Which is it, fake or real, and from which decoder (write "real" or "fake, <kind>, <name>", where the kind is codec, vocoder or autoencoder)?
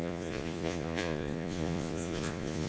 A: fake, vocoder, Vocos